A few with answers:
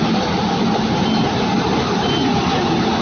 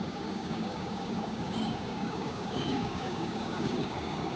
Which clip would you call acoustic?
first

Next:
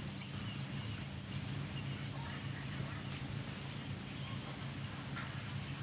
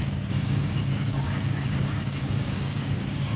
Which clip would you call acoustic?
first